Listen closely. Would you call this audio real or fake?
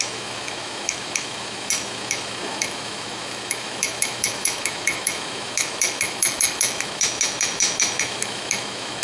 fake